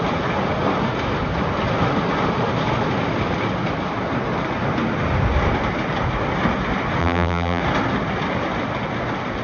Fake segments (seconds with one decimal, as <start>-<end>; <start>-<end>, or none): 7.0-7.6